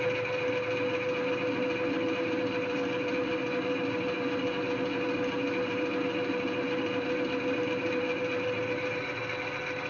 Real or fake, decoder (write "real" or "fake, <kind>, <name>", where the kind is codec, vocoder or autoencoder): real